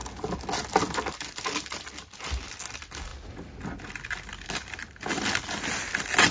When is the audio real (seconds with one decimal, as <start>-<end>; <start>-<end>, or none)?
0.0-6.3

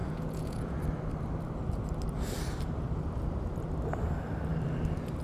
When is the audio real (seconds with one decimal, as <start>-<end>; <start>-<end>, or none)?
0.8-5.2